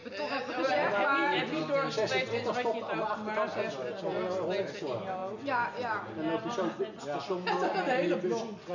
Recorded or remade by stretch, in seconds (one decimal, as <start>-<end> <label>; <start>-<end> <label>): 0.0-8.7 recorded